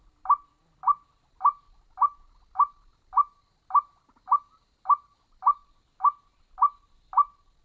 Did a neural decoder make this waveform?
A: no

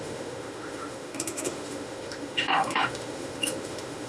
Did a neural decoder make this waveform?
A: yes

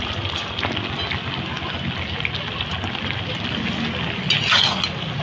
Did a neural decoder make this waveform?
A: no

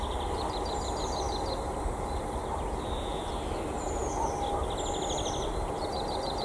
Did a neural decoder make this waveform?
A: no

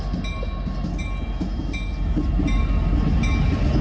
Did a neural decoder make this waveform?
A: no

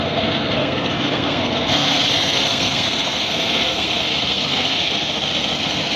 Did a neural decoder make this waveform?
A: yes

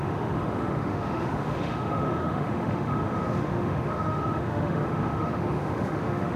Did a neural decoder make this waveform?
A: yes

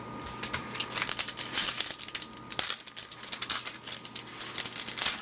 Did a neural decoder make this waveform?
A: no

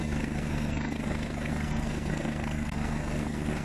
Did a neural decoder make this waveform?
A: yes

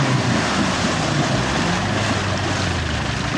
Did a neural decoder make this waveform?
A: no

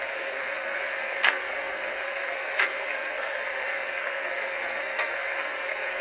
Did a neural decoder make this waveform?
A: yes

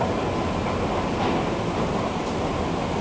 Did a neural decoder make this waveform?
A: no